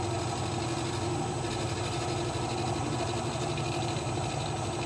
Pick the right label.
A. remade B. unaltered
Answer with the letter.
B